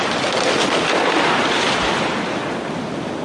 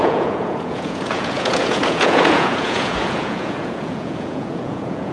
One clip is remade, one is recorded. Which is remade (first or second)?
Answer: second